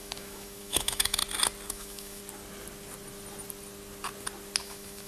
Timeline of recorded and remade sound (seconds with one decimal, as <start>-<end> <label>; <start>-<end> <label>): 0.0-1.2 remade; 1.2-1.7 recorded; 1.7-2.2 remade; 2.2-4.6 recorded; 4.6-5.1 remade